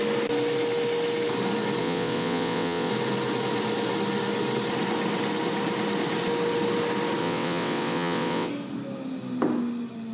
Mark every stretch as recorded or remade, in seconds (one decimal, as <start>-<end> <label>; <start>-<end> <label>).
0.0-1.8 recorded; 1.8-2.9 remade; 2.9-7.2 recorded; 7.2-8.5 remade; 8.5-10.1 recorded